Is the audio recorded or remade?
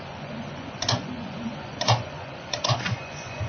remade